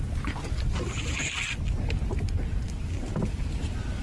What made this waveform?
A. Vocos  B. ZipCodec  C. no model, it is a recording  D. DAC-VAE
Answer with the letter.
C